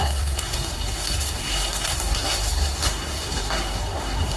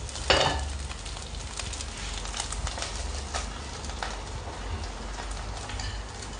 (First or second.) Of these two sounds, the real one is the second